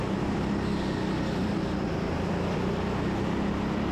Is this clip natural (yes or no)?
yes